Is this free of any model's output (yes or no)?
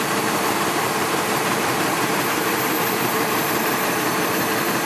no